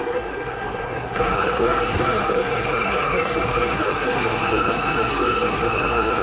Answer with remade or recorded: remade